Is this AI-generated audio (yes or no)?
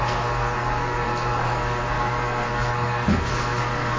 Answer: yes